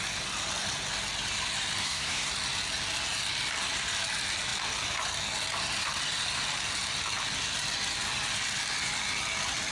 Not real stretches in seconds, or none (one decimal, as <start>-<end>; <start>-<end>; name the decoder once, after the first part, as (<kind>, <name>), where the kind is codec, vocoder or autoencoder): 1.8-2.3 (codec, SNAC)